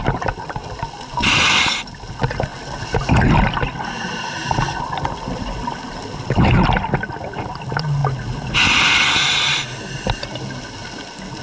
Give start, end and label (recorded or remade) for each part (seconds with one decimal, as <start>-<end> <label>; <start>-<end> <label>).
0.0-11.4 recorded